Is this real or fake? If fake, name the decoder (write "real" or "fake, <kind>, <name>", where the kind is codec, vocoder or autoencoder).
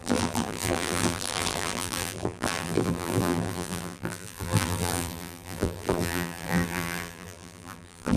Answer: fake, vocoder, BigVGAN v2